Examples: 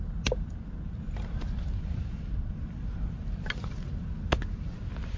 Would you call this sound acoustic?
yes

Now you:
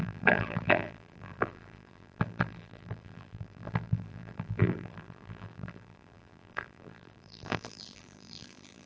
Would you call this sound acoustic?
no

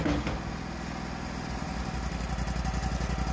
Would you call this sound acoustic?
yes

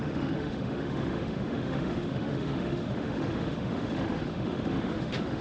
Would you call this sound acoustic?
no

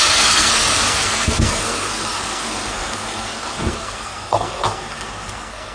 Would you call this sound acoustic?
no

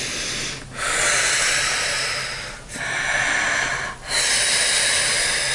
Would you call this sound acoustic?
yes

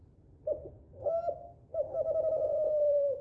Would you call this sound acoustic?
yes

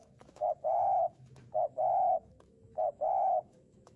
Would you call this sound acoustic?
no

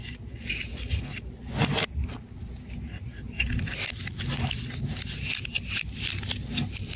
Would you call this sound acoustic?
yes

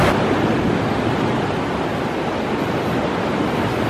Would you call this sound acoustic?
yes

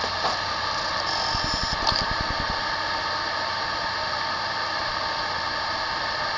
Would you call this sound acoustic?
yes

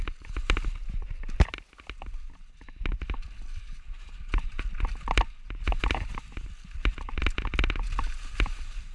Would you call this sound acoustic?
yes